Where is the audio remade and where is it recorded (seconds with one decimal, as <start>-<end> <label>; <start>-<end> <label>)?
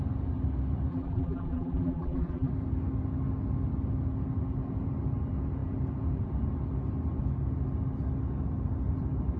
0.0-0.9 recorded; 0.9-2.5 remade; 2.5-9.4 recorded